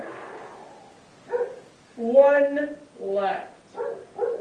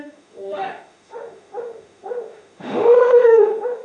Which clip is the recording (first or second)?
first